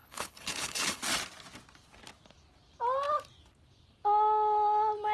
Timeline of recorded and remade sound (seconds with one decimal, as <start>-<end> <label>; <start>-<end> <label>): 0.0-1.0 remade; 1.0-5.1 recorded